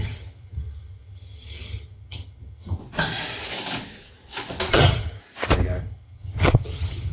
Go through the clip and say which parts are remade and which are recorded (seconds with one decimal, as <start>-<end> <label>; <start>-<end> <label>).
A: 0.0-2.8 remade; 2.8-4.7 recorded; 4.7-5.2 remade; 5.2-5.8 recorded; 5.8-7.1 remade